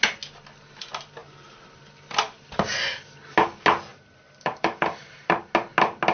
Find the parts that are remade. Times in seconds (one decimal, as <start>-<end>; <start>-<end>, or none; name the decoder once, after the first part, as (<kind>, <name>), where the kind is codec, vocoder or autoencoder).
3.9-5.4 (vocoder, BigVGAN v2)